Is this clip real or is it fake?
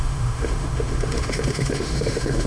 fake